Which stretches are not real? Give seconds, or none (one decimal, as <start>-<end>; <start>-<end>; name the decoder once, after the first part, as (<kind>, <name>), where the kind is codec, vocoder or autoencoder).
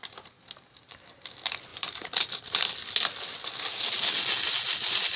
none